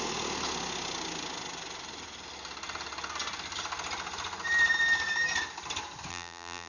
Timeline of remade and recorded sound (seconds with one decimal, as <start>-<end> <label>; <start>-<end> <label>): 0.0-6.1 recorded; 6.1-6.7 remade